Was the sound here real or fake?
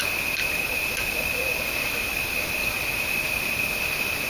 real